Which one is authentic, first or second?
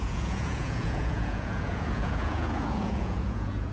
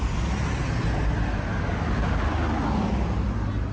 second